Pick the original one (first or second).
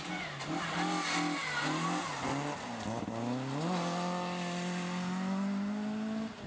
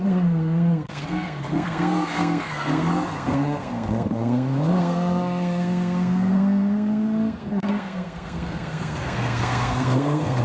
first